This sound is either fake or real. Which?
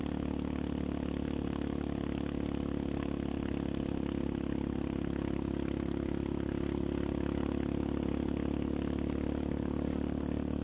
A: real